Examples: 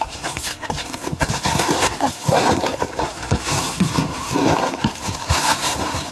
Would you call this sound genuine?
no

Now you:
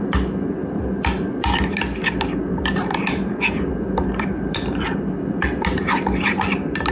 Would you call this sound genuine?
no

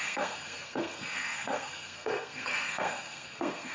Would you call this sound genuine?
no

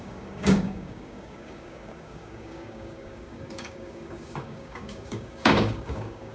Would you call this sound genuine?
no